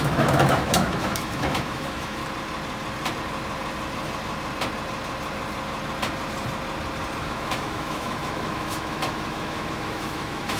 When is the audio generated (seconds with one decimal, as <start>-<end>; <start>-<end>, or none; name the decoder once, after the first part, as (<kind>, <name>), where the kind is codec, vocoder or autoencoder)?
0.0-2.2 (autoencoder, DAC-VAE); 7.2-10.6